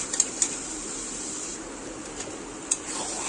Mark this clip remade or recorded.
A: recorded